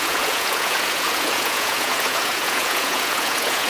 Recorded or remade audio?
remade